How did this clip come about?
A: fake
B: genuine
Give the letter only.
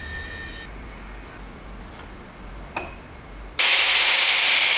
B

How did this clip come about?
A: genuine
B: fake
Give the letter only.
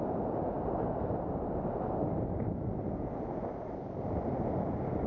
A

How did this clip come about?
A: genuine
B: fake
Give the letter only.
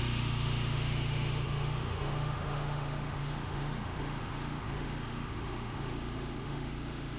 B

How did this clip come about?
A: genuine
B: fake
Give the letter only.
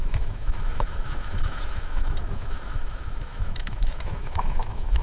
B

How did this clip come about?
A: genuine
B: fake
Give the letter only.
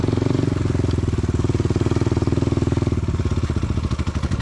A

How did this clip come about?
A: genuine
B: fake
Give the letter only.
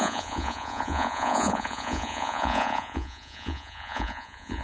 B